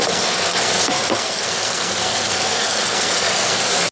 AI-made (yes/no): yes